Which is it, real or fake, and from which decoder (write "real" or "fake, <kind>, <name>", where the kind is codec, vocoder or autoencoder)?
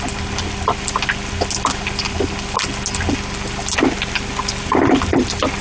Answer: real